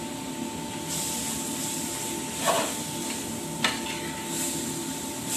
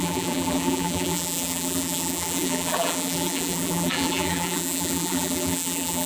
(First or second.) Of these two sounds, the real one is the first